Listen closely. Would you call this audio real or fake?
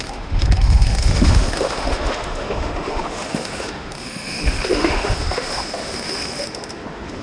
fake